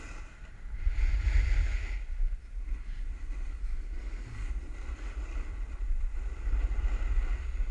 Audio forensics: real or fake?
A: real